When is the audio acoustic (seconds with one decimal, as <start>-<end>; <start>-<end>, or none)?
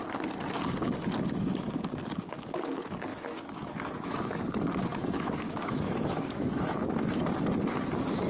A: 0.0-3.1; 4.2-4.9; 7.2-8.3